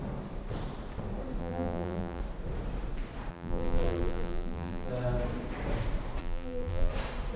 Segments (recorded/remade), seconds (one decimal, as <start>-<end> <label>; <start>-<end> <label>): 0.0-1.4 recorded; 1.4-2.2 remade; 2.2-3.3 recorded; 3.3-4.9 remade; 4.9-6.2 recorded; 6.2-6.9 remade; 6.9-7.4 recorded